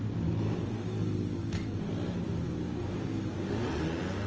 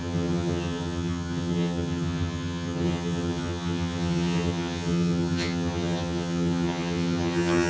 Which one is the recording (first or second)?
first